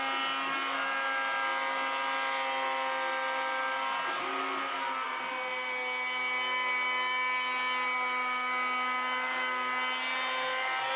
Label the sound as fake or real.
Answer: real